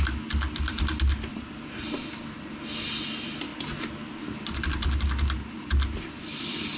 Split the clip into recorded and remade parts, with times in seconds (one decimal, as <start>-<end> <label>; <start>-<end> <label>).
0.0-6.8 recorded